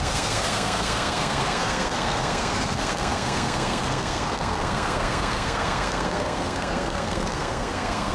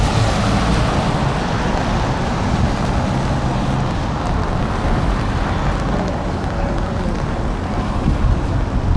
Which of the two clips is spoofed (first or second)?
first